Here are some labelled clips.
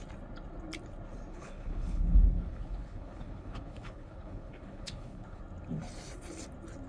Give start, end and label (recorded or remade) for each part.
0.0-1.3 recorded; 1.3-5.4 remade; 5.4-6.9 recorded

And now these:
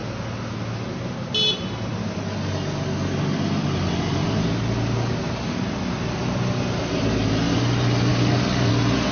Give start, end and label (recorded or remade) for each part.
0.0-8.1 recorded; 8.1-8.7 remade; 8.7-9.1 recorded

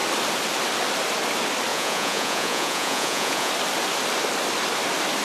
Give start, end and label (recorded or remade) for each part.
0.0-1.7 recorded; 1.7-3.5 remade; 3.5-5.2 recorded

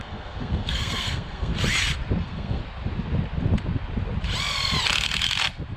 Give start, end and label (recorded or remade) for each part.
0.0-1.5 remade; 1.5-2.2 recorded; 2.2-2.6 remade; 2.6-5.8 recorded

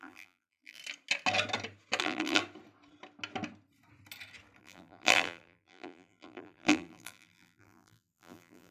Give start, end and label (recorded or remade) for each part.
0.0-0.8 remade; 0.8-2.0 recorded; 2.0-2.4 remade; 2.4-4.6 recorded; 4.6-8.7 remade

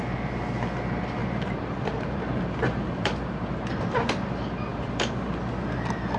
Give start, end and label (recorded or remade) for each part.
0.0-1.2 recorded; 1.2-3.3 remade; 3.3-6.2 recorded

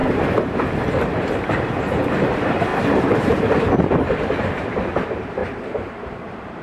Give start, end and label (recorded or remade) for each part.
0.0-6.6 remade